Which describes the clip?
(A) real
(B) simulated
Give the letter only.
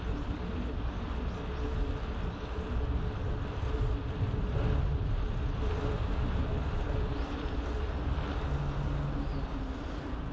A